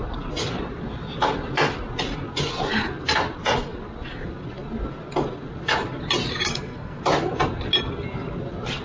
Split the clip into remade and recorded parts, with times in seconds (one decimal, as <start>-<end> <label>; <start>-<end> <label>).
0.0-6.3 recorded; 6.3-7.0 remade; 7.0-8.8 recorded